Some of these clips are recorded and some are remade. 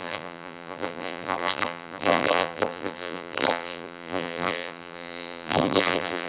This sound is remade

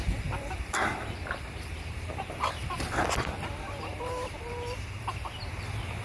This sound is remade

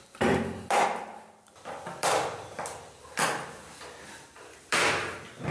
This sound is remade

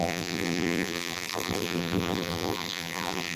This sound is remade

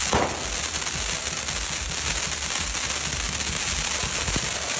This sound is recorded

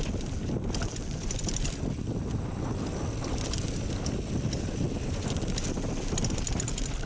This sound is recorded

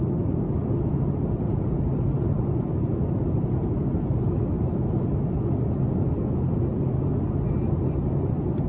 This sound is recorded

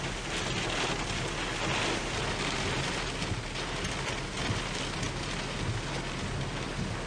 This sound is recorded